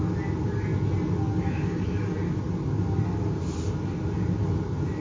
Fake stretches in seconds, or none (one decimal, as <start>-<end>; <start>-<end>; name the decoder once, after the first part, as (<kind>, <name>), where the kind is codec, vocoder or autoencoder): none